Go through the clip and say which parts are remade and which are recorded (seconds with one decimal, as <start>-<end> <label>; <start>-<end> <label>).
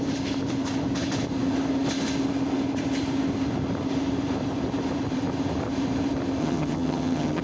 0.0-6.4 recorded; 6.4-7.4 remade